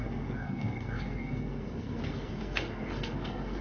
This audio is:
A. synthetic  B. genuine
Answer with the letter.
A